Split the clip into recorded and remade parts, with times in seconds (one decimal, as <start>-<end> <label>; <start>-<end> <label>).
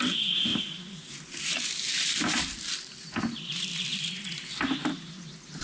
0.0-5.6 recorded